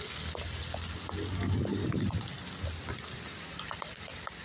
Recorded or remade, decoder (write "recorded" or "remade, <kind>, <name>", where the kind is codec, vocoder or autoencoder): recorded